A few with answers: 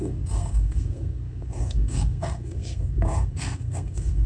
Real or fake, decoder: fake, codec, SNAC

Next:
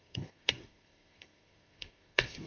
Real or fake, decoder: fake, codec, SNAC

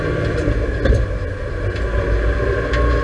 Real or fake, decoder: fake, vocoder, BigVGAN v2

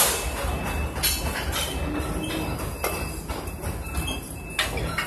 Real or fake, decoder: real